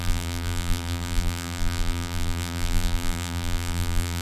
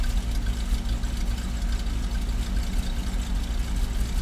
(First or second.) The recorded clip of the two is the second